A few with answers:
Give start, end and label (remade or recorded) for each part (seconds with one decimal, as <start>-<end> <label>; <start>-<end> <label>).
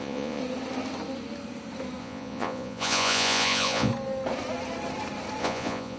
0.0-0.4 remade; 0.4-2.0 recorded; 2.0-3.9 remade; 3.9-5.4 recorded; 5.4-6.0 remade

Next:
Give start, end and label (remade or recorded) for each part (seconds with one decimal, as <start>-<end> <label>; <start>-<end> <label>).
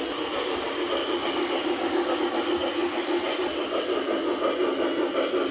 0.0-1.0 recorded; 1.0-2.2 remade; 2.2-5.5 recorded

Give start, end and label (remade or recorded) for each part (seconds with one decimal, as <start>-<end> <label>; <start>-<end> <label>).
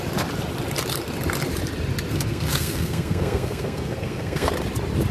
0.0-2.1 recorded; 2.1-4.5 remade; 4.5-5.1 recorded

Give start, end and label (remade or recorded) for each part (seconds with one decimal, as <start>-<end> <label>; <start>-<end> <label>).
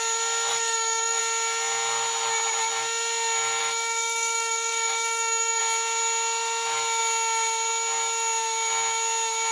0.0-0.5 recorded; 0.5-1.2 remade; 1.2-3.6 recorded; 3.6-5.6 remade; 5.6-9.5 recorded